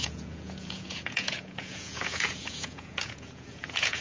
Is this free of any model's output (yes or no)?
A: no